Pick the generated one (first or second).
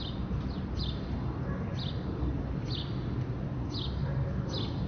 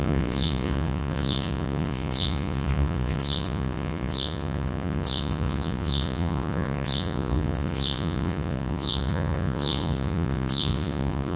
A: second